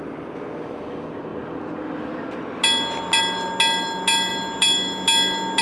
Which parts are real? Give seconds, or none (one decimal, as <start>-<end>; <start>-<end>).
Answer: 0.0-5.6